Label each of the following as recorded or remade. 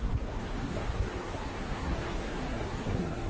remade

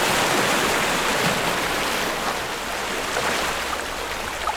recorded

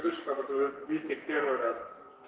remade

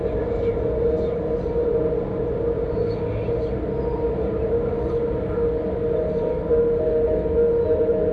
recorded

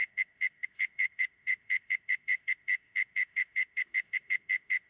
remade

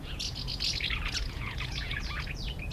remade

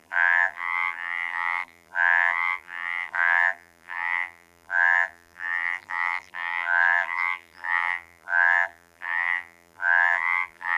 remade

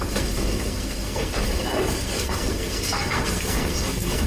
remade